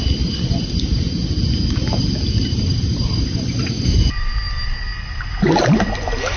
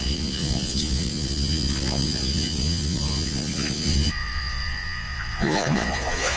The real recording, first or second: first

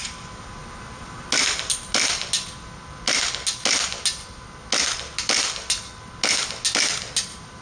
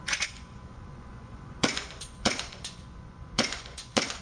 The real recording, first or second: first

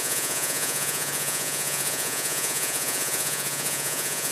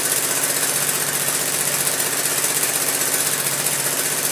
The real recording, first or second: second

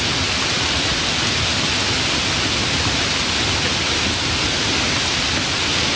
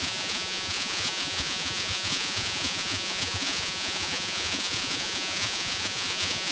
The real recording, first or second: first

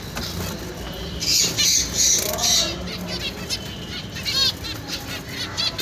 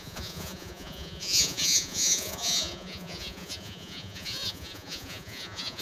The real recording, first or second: first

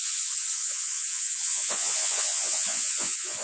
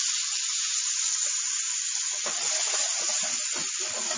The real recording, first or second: second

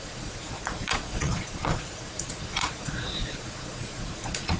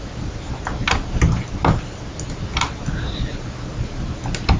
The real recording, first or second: second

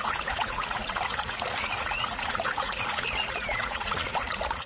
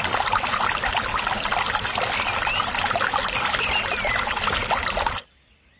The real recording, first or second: second